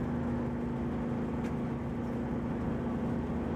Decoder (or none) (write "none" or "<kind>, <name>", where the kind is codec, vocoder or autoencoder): none